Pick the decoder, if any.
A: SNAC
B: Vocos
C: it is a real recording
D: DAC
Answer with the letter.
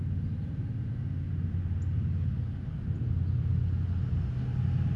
C